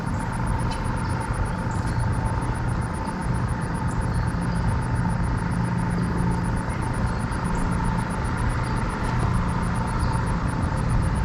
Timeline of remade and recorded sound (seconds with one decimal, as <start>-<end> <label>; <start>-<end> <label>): 0.0-11.2 recorded